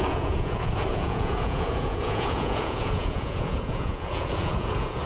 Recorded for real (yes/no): no